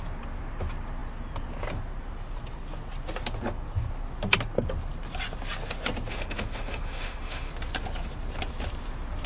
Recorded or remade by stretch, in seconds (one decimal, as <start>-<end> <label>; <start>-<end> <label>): 0.0-6.1 recorded; 6.1-7.5 remade; 7.5-9.3 recorded